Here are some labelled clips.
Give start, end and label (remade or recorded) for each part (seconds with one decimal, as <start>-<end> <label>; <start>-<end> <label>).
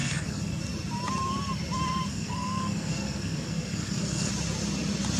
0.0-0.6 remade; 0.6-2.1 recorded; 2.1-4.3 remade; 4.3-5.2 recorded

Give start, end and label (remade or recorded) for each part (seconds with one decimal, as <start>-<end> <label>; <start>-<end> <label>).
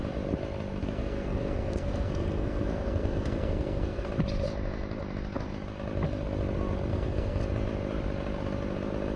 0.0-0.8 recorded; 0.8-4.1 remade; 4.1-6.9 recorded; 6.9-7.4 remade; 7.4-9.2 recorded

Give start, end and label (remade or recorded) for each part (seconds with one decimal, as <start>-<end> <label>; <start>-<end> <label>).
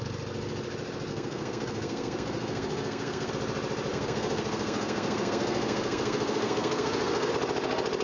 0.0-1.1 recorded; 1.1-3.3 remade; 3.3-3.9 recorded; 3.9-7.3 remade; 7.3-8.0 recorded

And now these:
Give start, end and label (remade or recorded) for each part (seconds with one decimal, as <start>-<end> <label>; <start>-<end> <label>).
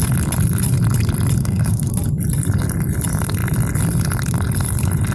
0.0-1.4 recorded; 1.4-1.9 remade; 1.9-5.1 recorded